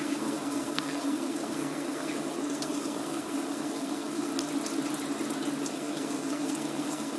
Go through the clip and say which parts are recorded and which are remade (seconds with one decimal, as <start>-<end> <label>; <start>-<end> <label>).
0.0-4.3 remade; 4.3-5.7 recorded; 5.7-7.2 remade